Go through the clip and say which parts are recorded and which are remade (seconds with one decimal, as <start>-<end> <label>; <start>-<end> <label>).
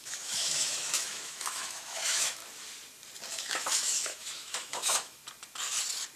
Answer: 0.0-2.4 remade; 2.4-3.3 recorded; 3.3-5.2 remade; 5.2-6.2 recorded